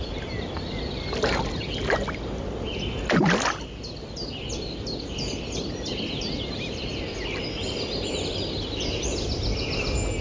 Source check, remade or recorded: recorded